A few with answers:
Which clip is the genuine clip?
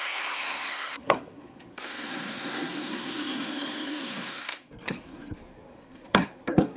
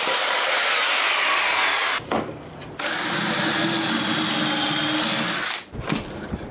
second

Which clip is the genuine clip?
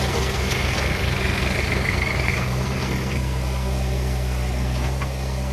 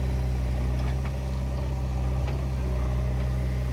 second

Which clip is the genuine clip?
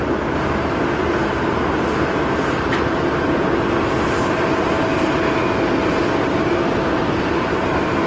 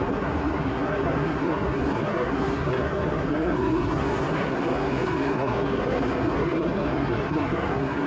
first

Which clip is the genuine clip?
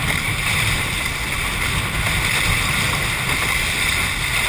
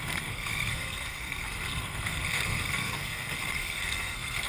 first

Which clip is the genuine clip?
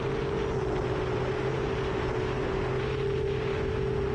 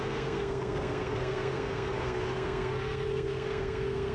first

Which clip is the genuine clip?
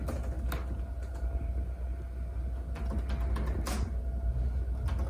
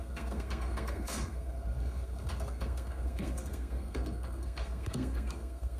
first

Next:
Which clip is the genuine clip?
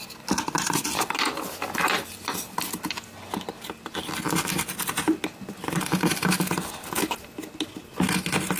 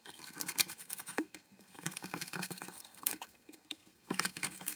first